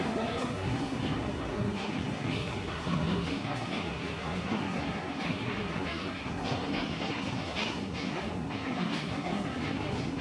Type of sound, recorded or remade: remade